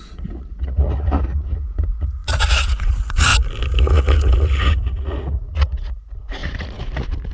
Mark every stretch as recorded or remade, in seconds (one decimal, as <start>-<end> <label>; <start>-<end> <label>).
0.0-3.3 remade; 3.3-3.8 recorded; 3.8-7.3 remade